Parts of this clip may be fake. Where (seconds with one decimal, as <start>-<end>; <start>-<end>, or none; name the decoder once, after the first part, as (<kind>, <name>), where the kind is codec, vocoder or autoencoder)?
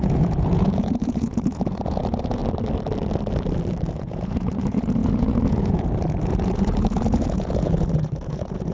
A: 0.0-2.4 (vocoder, Vocos); 3.9-8.7